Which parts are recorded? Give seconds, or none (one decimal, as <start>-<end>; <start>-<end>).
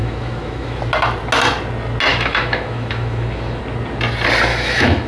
0.8-2.1; 3.6-4.5